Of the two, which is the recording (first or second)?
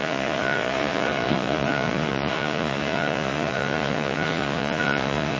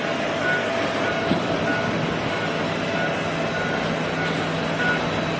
second